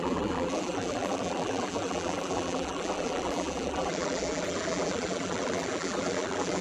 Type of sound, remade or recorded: remade